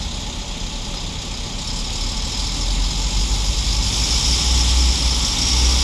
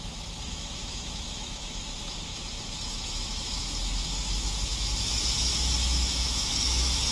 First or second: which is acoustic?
first